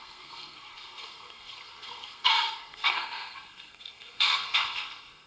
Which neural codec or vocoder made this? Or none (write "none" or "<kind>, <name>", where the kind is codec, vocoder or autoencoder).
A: codec, SNAC